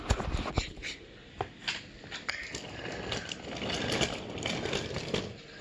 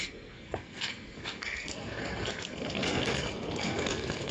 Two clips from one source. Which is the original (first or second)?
first